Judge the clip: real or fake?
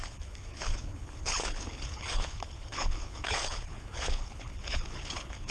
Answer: fake